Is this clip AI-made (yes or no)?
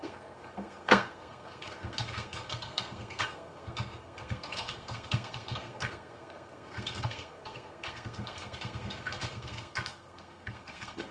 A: yes